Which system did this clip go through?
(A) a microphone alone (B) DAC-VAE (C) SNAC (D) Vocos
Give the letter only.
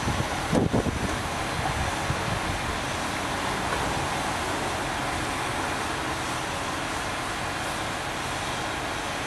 A